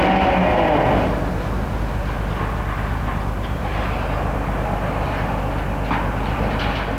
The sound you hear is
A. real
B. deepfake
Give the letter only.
A